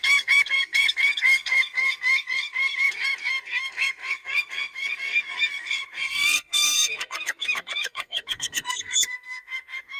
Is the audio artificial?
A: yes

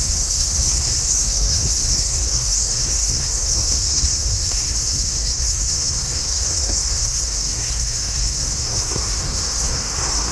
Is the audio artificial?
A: yes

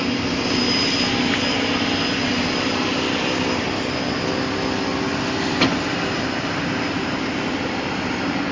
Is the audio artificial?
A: no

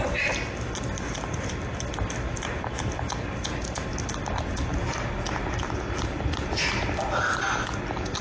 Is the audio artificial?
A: no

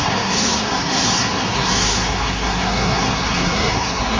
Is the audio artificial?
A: yes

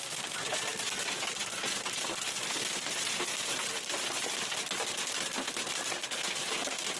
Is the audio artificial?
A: no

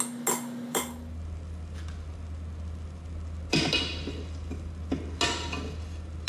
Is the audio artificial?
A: no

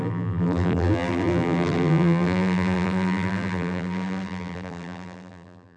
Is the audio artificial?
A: yes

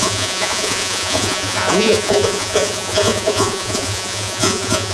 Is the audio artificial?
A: yes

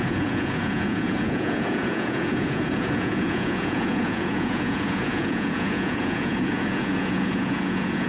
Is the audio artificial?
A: yes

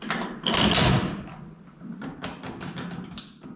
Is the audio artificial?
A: no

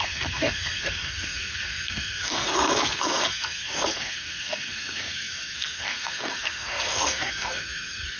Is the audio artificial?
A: yes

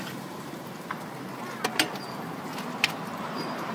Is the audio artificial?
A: yes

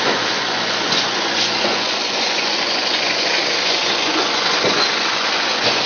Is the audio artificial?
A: yes